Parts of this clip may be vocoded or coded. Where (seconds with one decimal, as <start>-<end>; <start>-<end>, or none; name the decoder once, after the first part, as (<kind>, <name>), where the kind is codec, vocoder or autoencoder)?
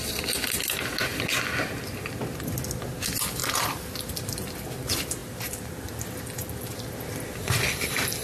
3.4-4.0 (vocoder, BigVGAN v2)